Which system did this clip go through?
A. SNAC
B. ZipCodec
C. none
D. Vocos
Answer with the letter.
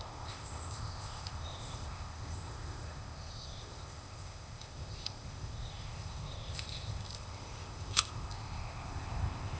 B